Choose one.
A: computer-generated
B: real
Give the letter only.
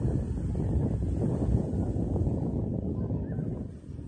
B